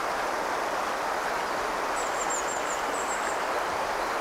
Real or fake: real